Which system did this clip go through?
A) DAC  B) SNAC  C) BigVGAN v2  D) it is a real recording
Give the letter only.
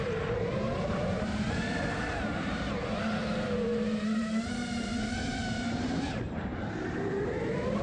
C